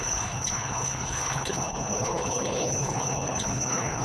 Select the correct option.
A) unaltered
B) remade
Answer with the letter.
B